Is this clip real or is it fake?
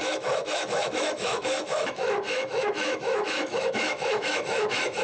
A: fake